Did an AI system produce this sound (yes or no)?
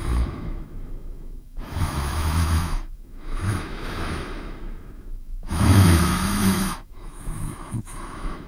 yes